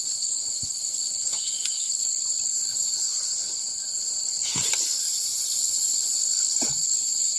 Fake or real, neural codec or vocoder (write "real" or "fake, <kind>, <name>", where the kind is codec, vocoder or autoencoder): fake, codec, HILCodec